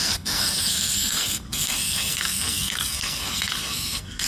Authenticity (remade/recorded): remade